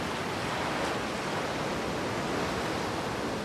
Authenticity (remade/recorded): recorded